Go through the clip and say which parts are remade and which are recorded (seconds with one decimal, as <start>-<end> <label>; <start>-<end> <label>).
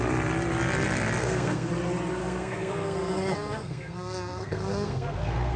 0.0-1.2 recorded; 1.2-1.7 remade; 1.7-2.2 recorded; 2.2-5.6 remade